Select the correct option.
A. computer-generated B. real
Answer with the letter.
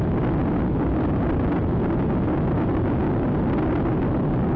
B